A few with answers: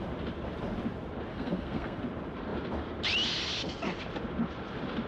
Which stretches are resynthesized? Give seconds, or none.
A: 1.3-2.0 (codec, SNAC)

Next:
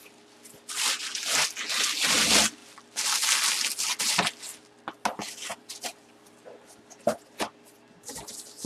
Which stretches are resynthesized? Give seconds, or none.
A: 5.5-8.1 (vocoder, BigVGAN v2)